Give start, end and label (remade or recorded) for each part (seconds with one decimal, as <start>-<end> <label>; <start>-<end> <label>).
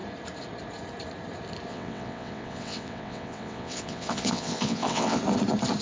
0.0-1.7 recorded; 1.7-5.2 remade; 5.2-5.8 recorded